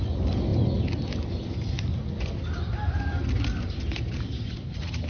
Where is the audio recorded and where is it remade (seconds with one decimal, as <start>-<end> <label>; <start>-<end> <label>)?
0.0-5.1 recorded